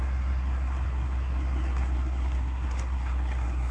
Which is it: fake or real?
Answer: fake